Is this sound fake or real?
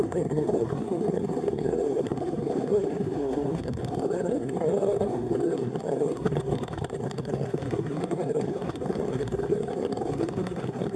fake